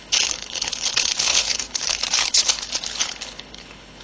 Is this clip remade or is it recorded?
remade